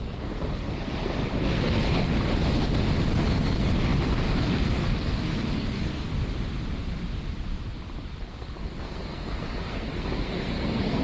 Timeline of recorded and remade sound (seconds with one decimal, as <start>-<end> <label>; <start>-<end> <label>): 0.0-2.1 remade; 2.1-3.0 recorded; 3.0-6.1 remade; 6.1-8.2 recorded; 8.2-11.0 remade